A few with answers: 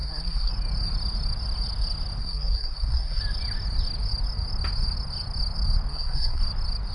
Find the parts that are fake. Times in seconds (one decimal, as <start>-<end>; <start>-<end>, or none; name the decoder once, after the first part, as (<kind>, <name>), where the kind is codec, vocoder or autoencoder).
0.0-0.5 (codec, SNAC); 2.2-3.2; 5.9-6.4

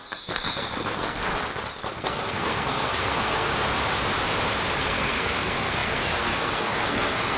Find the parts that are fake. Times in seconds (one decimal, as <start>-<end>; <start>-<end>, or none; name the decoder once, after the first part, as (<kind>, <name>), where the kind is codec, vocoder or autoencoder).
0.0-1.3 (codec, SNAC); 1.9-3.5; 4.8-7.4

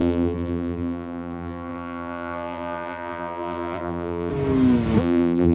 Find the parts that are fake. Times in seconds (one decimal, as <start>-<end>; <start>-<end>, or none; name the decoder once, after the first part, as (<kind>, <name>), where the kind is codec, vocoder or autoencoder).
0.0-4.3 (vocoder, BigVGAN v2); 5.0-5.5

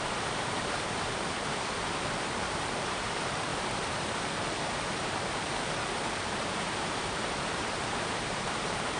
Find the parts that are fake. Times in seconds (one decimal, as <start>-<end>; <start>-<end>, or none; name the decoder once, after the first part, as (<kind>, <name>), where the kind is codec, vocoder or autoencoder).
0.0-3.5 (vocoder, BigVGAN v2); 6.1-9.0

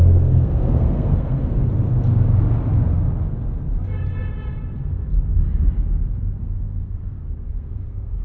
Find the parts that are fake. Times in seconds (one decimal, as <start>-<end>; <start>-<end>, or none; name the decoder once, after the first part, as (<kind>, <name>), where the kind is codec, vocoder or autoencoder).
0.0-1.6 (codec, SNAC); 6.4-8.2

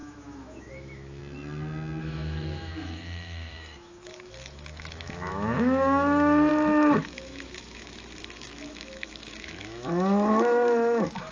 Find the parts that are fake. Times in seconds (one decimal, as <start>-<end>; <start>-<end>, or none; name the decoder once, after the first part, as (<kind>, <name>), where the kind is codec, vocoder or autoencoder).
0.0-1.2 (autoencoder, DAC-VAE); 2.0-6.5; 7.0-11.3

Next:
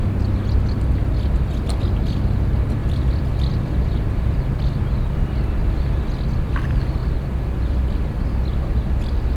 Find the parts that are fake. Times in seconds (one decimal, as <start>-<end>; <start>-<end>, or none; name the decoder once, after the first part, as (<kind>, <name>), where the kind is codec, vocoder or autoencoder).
2.8-6.0 (vocoder, BigVGAN v2); 7.0-7.6